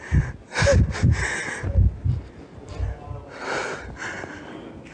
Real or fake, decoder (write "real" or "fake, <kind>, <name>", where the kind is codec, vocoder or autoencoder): real